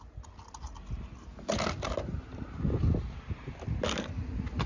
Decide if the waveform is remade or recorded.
recorded